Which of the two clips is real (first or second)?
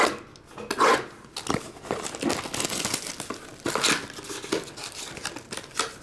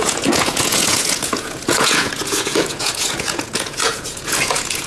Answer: first